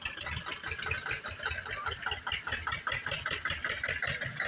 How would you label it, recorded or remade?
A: recorded